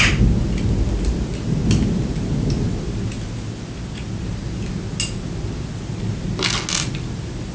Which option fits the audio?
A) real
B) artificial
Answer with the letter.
A